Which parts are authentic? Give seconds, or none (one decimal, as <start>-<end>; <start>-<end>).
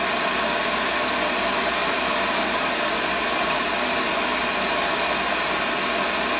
0.0-6.4